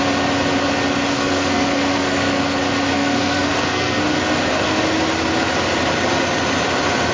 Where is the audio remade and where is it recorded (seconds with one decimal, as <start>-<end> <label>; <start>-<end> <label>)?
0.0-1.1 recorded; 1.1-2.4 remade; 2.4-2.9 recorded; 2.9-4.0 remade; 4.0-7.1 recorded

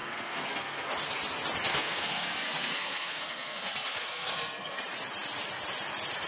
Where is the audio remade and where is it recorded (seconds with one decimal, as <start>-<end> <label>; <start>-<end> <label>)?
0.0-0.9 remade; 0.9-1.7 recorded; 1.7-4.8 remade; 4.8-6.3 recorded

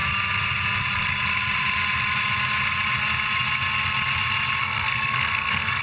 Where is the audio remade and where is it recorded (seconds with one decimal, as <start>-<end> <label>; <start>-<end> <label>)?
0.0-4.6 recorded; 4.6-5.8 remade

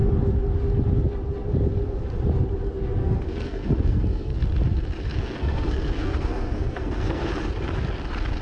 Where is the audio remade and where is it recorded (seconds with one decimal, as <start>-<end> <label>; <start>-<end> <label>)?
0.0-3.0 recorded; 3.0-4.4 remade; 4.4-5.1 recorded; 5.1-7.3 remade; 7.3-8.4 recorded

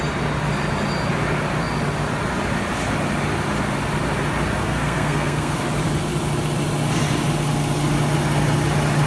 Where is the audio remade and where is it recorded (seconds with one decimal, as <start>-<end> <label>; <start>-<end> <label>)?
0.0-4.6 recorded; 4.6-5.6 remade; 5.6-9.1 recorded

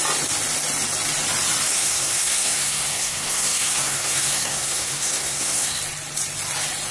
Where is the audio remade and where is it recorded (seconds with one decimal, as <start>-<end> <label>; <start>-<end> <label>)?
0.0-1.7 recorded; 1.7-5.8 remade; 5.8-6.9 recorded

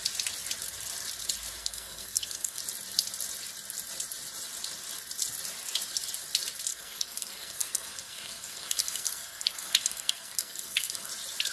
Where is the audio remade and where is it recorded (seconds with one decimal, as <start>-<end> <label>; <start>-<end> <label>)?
0.0-1.6 recorded; 1.6-2.6 remade; 2.6-6.7 recorded; 6.7-11.1 remade; 11.1-11.5 recorded